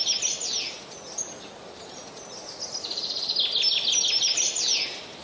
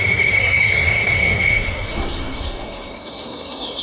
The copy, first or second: second